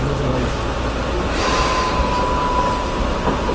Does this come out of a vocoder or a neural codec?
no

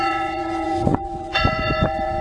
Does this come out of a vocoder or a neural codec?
yes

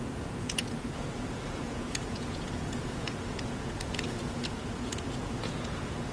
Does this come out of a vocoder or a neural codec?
yes